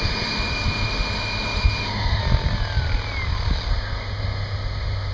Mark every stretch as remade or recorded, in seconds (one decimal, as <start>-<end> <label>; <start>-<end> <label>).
0.0-2.2 remade; 2.2-3.7 recorded; 3.7-5.1 remade